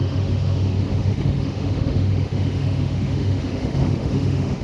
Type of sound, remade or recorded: remade